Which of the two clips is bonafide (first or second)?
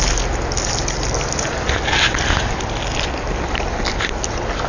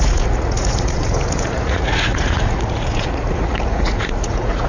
first